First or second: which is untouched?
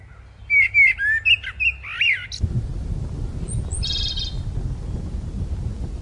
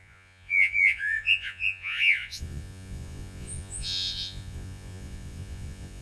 first